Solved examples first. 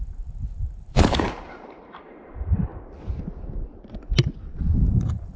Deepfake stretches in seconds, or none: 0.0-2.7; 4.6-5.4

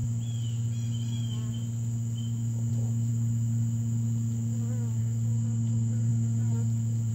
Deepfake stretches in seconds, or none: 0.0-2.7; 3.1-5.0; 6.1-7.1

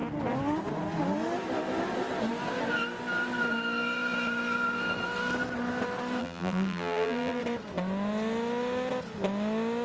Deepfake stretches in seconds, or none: 6.2-7.4

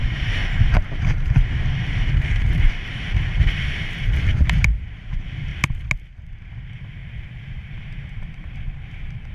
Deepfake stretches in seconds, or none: 0.0-5.5; 6.2-9.3